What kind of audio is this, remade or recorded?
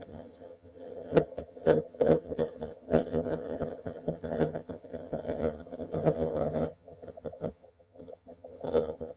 remade